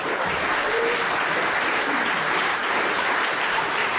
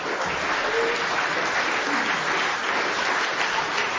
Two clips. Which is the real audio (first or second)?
second